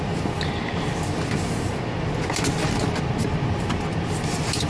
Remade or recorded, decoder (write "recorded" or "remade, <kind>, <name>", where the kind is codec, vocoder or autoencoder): recorded